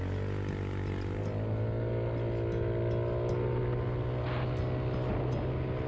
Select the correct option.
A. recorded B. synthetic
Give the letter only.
A